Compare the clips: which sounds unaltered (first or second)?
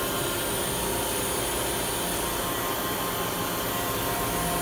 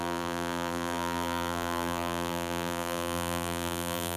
first